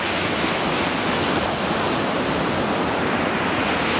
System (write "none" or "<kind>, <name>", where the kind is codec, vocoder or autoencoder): none